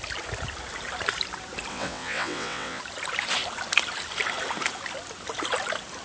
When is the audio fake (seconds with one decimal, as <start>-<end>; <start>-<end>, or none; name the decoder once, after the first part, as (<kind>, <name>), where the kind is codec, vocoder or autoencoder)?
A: 1.7-2.8 (vocoder, WaveNeXt)